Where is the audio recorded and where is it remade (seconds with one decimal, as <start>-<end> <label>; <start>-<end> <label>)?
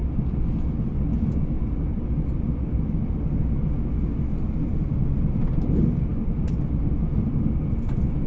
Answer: 0.0-8.3 recorded